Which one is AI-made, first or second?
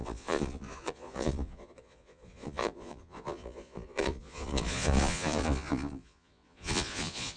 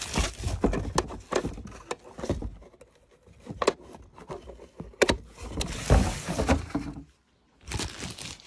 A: first